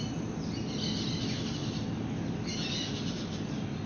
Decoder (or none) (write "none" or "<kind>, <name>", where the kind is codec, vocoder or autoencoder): none